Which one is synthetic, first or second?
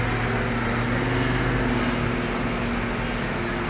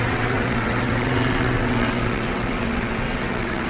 second